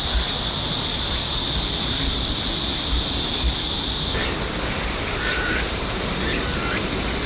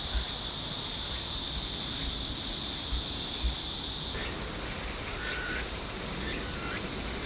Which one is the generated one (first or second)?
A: first